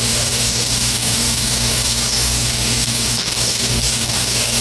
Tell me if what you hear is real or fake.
fake